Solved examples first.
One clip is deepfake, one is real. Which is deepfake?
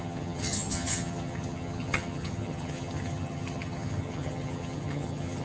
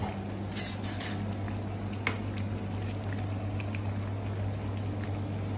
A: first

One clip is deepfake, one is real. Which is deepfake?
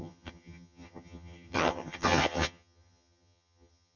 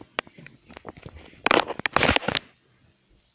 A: first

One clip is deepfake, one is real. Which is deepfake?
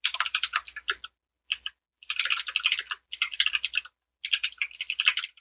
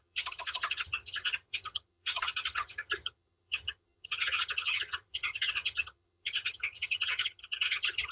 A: second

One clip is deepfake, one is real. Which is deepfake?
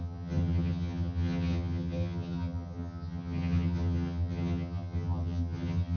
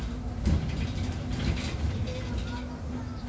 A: first